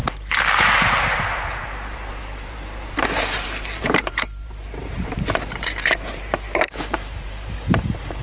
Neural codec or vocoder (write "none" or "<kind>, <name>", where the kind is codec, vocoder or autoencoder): vocoder, BigVGAN v2